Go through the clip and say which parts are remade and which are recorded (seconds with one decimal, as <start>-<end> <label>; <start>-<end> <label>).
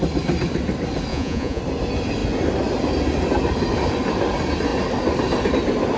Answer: 0.0-1.1 recorded; 1.1-1.6 remade; 1.6-6.0 recorded